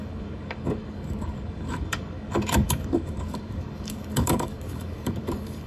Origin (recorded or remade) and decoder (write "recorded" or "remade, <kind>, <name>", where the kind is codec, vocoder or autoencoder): remade, codec, DAC